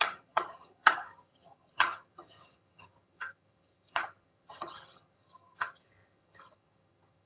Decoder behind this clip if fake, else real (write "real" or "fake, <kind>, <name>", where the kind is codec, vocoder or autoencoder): fake, vocoder, HiFi-GAN